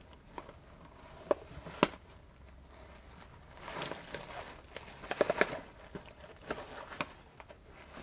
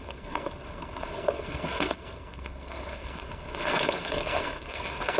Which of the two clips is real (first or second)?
first